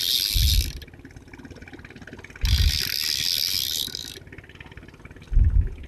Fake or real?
real